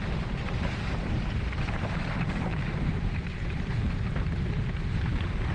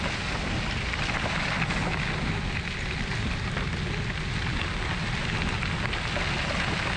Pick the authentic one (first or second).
second